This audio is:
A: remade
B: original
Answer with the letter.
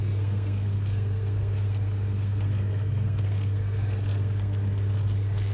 A